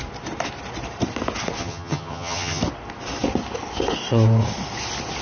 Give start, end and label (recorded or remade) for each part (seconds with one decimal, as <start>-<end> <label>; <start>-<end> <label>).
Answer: 0.0-1.6 recorded; 1.6-2.6 remade; 2.6-5.2 recorded